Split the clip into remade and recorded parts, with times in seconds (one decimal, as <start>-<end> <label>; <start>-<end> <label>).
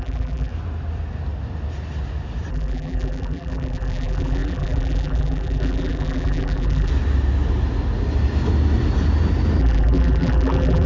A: 0.0-0.5 remade; 0.5-2.5 recorded; 2.5-6.9 remade; 6.9-9.6 recorded; 9.6-10.9 remade